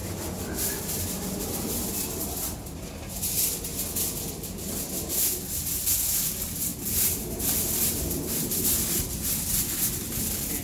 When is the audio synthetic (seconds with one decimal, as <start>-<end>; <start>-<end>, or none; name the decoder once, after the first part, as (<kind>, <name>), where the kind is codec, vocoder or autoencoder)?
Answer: 6.7-7.2 (vocoder, BigVGAN v2)